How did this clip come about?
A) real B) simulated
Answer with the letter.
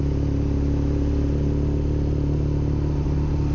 A